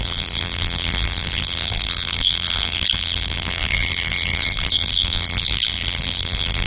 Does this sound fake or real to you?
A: fake